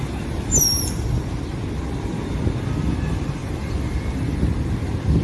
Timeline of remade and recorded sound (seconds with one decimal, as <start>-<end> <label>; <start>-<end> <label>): 0.0-3.4 recorded; 3.4-3.9 remade; 3.9-5.2 recorded